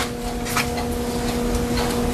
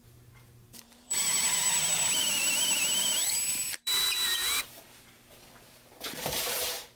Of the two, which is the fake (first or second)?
second